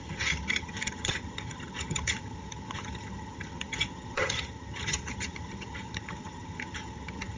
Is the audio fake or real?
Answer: fake